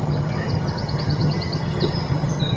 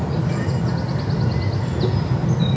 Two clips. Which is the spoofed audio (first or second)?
first